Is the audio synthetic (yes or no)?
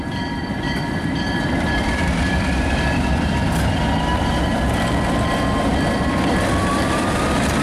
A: yes